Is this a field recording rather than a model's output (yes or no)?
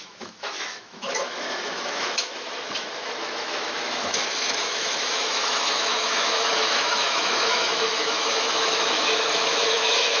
no